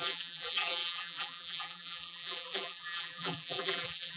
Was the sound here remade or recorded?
remade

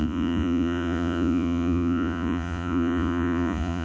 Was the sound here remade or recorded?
remade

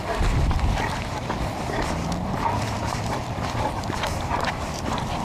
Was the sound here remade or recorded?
remade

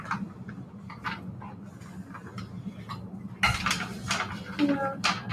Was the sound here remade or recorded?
recorded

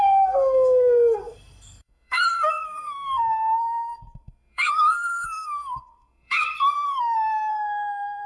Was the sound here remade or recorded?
remade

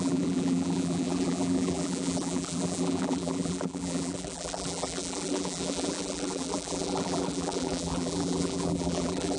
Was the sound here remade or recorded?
remade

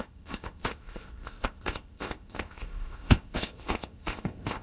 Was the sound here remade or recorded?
remade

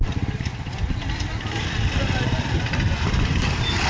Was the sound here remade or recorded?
remade